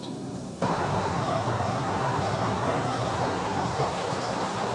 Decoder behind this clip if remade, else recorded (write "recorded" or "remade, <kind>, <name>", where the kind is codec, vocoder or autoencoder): remade, codec, SNAC